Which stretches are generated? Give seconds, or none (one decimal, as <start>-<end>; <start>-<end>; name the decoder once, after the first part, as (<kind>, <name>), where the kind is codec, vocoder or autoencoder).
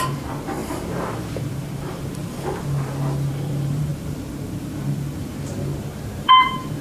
0.0-2.2 (vocoder, BigVGAN v2); 3.3-3.9; 4.6-6.8